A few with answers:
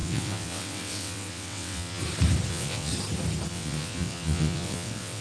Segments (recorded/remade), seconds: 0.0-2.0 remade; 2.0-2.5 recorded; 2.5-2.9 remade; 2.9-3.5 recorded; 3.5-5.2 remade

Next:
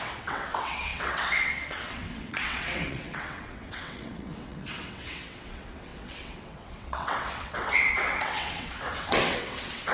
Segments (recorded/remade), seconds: 0.0-9.9 remade

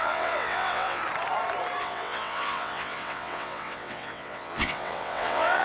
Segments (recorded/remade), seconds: 0.0-1.0 remade; 1.0-1.8 recorded; 1.8-5.6 remade

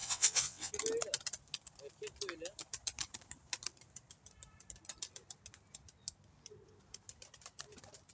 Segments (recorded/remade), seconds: 0.0-0.7 remade; 0.7-8.1 recorded

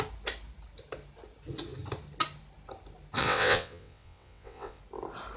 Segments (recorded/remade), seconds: 0.0-3.2 recorded; 3.2-4.8 remade; 4.8-5.4 recorded